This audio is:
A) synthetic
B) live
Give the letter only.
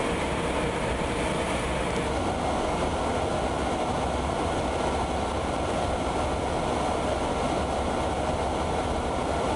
B